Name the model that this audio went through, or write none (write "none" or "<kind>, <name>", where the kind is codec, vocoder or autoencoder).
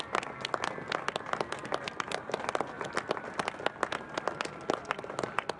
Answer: none